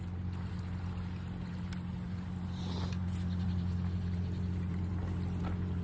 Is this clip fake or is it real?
real